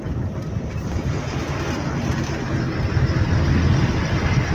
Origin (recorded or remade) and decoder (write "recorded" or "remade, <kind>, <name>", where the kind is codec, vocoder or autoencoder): recorded